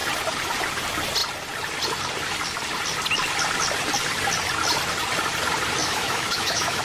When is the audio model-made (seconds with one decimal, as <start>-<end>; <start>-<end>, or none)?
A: 5.8-6.8